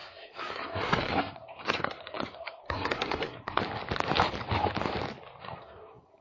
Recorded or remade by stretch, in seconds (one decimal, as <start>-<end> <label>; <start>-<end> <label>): 0.0-3.6 remade; 3.6-5.4 recorded; 5.4-6.2 remade